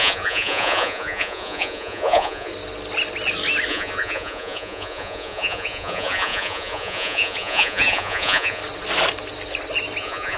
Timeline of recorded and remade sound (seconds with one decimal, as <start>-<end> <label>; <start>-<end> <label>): 0.0-2.5 remade; 2.5-3.7 recorded; 3.7-8.6 remade; 8.6-10.0 recorded; 10.0-10.4 remade